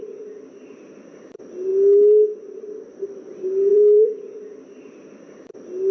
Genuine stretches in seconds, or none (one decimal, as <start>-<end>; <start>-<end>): 0.0-3.7; 4.2-5.9